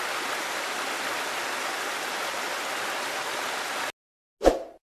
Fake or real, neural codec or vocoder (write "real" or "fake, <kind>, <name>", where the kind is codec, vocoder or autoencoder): real